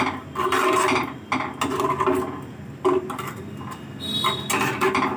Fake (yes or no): no